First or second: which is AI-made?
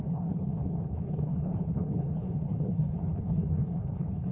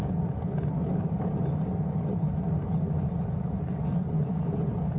first